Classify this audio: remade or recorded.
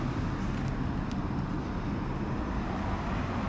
recorded